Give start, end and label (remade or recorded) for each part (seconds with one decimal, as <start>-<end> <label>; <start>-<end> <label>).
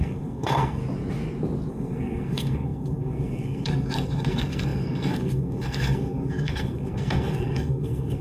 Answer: 0.0-0.8 remade; 0.8-1.7 recorded; 1.7-8.2 remade